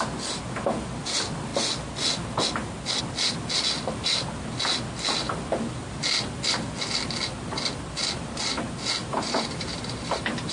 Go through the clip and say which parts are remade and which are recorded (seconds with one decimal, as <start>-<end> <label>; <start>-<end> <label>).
0.0-9.0 recorded; 9.0-10.5 remade